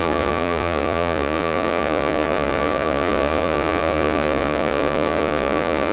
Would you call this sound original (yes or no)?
no